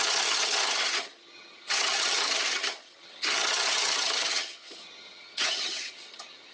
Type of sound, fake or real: fake